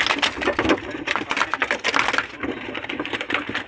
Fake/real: real